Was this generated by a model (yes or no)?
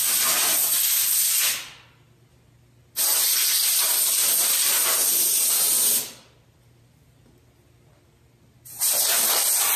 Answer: no